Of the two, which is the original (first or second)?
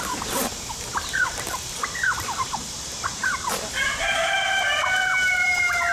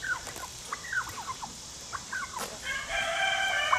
second